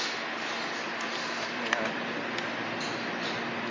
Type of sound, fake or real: real